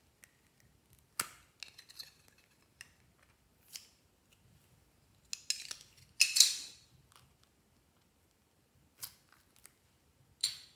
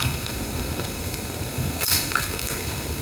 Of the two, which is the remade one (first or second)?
second